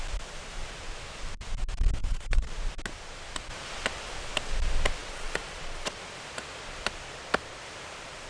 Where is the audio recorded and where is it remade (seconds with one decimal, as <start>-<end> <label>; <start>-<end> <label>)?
0.0-2.0 recorded; 2.0-2.5 remade; 2.5-5.0 recorded; 5.0-6.0 remade; 6.0-8.3 recorded